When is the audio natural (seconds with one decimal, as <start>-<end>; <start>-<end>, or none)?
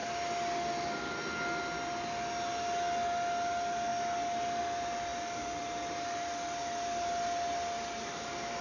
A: 0.0-8.6